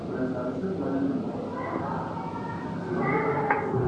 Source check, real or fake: real